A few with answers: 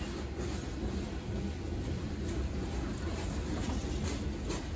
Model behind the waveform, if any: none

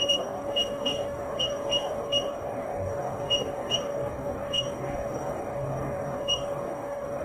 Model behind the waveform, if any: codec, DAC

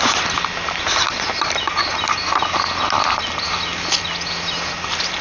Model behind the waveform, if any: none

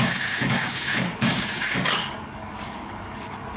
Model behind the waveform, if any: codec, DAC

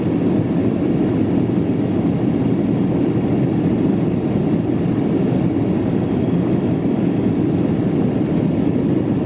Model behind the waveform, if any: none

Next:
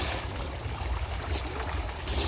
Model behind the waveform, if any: none